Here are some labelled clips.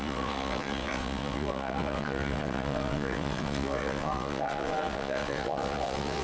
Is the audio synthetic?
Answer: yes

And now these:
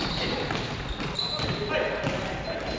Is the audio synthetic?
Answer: no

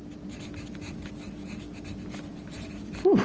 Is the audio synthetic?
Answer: no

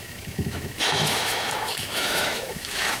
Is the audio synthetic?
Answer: yes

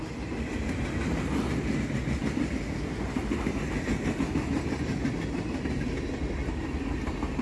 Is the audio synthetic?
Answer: no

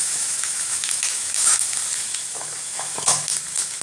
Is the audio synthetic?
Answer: yes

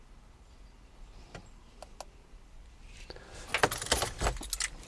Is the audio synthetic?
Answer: no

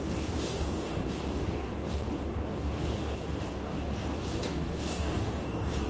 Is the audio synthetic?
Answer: yes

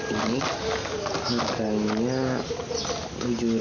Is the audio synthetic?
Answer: no